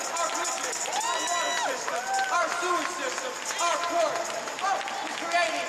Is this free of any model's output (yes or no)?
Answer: yes